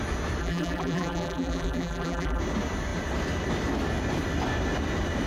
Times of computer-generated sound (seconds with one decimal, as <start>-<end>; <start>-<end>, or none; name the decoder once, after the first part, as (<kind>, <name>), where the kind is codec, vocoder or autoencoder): 0.4-2.4 (vocoder, BigVGAN v2)